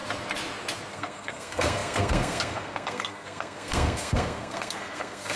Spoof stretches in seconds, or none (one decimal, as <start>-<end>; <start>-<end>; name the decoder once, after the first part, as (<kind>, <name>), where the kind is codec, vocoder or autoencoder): 0.9-5.4 (codec, SNAC)